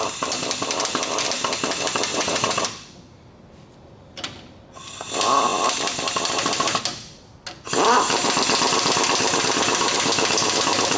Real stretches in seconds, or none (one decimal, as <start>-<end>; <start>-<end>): 0.0-2.1; 2.6-11.0